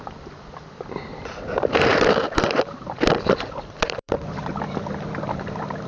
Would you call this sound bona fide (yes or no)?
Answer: no